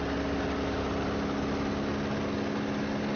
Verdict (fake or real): real